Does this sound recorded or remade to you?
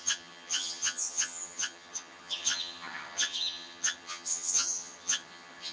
remade